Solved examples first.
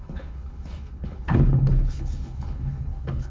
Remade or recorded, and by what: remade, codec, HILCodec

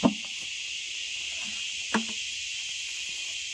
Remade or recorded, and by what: recorded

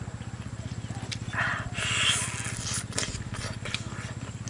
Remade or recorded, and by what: recorded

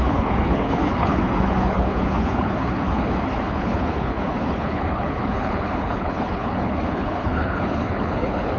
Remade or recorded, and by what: remade, codec, HILCodec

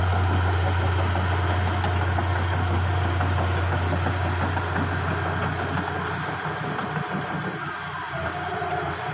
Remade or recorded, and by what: recorded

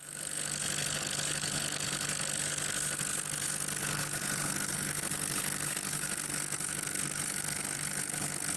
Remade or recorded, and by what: remade, codec, HILCodec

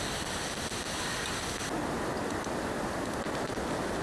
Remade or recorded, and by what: recorded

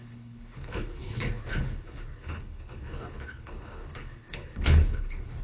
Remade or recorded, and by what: remade, codec, HILCodec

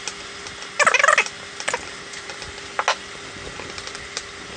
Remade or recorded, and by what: recorded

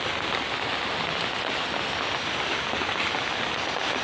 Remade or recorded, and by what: recorded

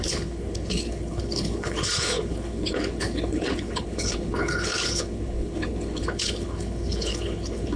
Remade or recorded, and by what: remade, codec, HILCodec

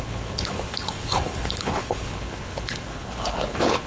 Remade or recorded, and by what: remade, codec, HILCodec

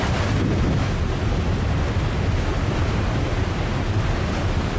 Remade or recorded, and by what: recorded